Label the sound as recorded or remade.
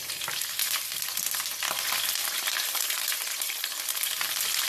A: remade